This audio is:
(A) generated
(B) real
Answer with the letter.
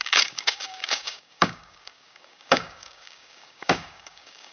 A